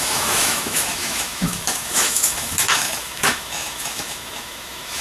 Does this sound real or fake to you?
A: fake